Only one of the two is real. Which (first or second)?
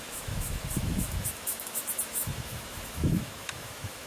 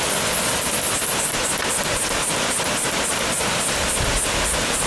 second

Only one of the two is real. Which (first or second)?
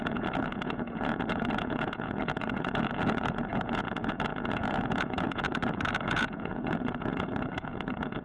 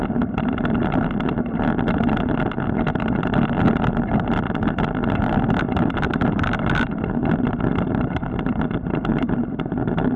second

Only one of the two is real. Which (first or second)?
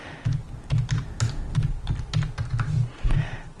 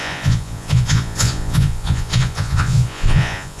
first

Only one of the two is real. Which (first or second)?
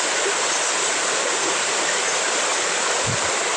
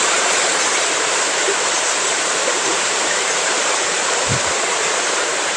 first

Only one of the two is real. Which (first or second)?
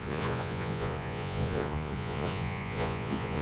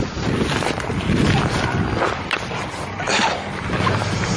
second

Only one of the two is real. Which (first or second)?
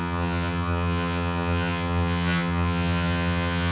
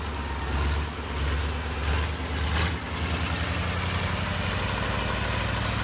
second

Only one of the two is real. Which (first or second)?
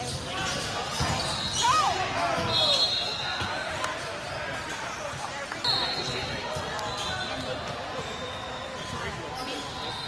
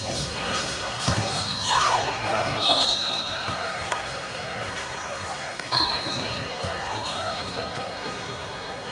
first